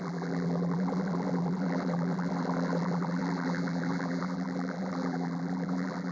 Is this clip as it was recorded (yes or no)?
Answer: no